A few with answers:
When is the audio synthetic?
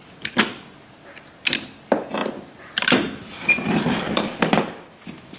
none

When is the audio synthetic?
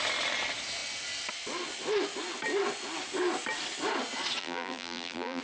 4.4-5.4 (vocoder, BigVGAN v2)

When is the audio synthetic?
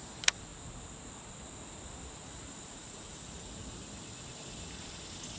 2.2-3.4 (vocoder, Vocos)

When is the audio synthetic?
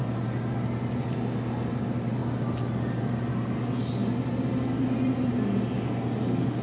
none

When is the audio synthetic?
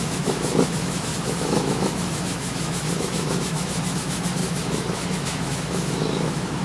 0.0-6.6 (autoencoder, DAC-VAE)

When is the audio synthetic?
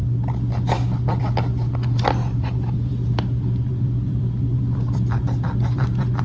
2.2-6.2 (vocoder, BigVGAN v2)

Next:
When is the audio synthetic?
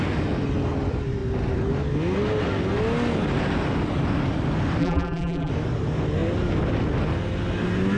4.8-5.5 (vocoder, BigVGAN v2)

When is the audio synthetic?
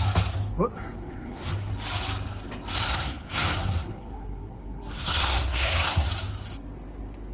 0.7-1.7 (codec, SNAC); 2.9-6.1